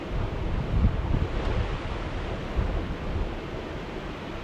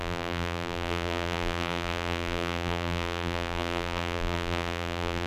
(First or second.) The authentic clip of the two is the first